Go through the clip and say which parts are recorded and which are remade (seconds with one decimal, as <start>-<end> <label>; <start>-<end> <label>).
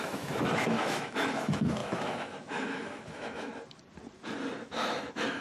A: 0.0-3.5 remade; 3.5-4.6 recorded; 4.6-5.4 remade